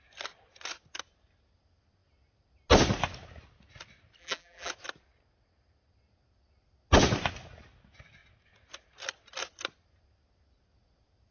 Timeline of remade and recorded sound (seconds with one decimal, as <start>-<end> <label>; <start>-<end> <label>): 0.0-4.2 recorded; 4.2-4.7 remade; 4.7-11.3 recorded